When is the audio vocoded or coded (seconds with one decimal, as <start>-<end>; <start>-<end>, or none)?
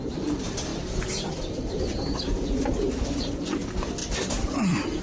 4.0-5.0